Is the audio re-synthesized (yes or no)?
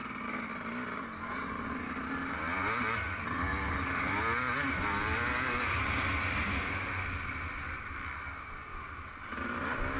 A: no